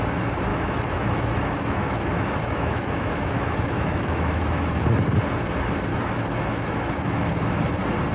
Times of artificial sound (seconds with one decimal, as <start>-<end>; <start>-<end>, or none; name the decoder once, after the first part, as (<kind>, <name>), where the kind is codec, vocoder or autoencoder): 0.5-4.9 (autoencoder, DAC-VAE); 5.9-7.6

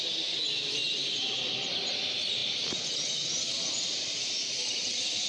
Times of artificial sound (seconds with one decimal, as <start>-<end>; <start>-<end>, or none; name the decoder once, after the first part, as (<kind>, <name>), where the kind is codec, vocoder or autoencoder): none